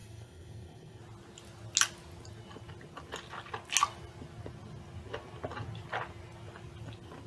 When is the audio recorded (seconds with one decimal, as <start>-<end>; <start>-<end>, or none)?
1.0-7.3